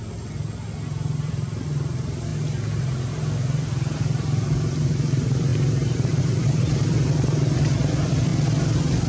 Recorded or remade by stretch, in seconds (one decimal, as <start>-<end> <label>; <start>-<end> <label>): 0.0-2.3 remade; 2.3-4.0 recorded; 4.0-8.3 remade; 8.3-9.1 recorded